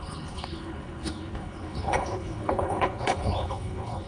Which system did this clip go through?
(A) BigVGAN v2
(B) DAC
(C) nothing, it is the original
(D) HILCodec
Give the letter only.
D